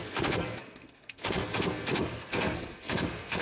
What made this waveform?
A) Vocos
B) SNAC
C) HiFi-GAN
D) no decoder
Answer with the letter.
B